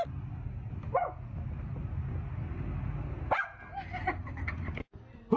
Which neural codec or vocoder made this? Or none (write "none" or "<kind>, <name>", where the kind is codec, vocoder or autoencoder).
none